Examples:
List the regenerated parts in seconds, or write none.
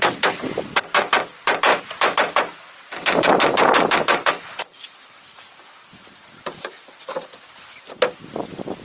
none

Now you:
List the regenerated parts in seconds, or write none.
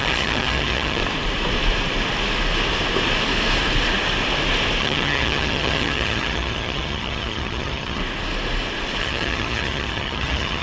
0.0-1.0 (vocoder, HiFi-GAN); 4.8-8.0; 9.0-10.6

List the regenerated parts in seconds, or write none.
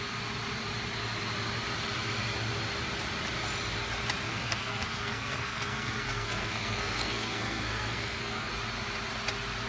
4.3-8.5 (codec, SNAC)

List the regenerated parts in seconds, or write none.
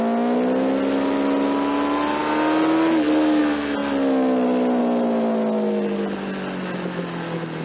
none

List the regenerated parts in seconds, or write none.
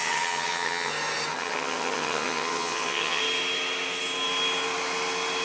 0.0-0.9 (vocoder, HiFi-GAN); 1.3-3.2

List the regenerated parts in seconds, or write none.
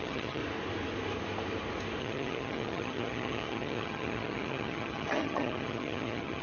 0.0-0.4 (vocoder, HiFi-GAN); 2.0-6.4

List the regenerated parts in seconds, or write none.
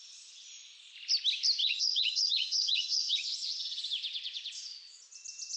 1.6-5.0 (vocoder, Vocos)